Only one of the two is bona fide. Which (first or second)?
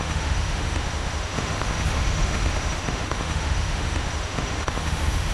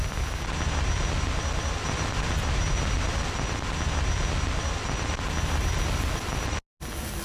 second